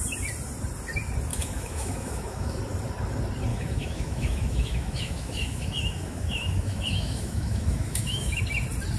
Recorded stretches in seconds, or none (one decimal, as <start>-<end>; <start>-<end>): 0.0-1.3; 2.6-3.5; 8.4-9.0